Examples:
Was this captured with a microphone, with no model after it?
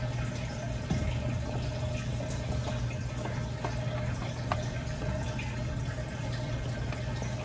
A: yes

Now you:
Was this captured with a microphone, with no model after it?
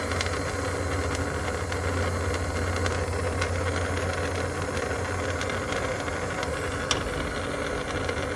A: yes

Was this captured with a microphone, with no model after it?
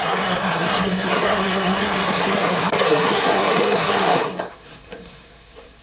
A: no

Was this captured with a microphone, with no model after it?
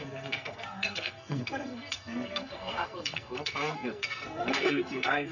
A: no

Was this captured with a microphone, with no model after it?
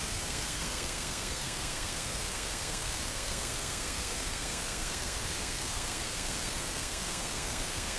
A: no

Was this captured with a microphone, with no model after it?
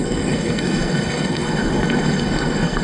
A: no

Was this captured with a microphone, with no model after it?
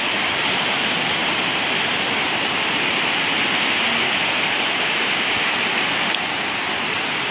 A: yes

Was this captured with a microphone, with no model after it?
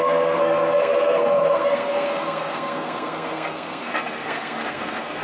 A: no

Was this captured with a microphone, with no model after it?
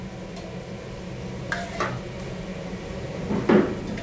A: yes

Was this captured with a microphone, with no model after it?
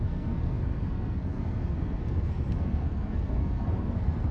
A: no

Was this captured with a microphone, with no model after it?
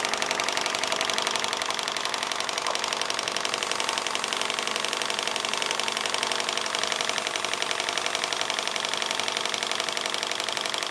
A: yes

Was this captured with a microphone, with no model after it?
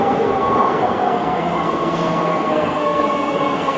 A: no